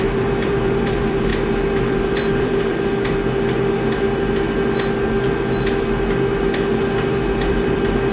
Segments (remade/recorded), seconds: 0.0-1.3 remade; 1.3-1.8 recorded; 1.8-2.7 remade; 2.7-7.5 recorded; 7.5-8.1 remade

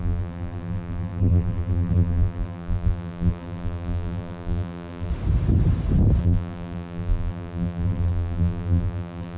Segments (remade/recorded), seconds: 0.0-5.1 remade; 5.1-6.2 recorded; 6.2-9.4 remade